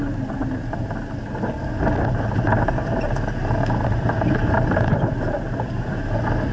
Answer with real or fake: real